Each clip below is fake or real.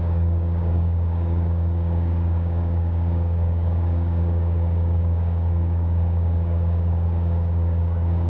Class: fake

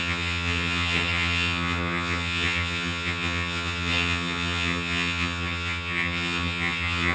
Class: fake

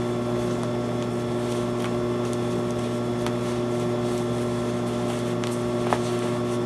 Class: real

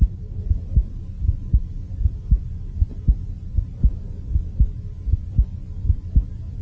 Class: real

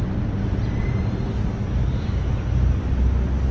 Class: real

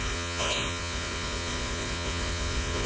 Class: fake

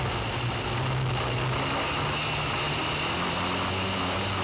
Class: real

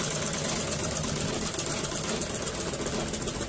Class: real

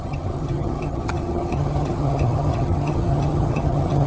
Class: fake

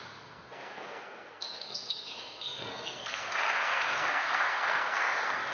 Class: fake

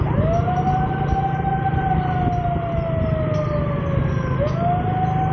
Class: real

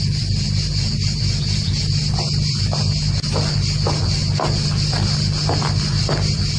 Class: real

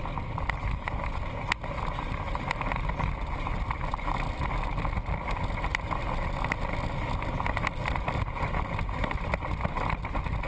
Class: real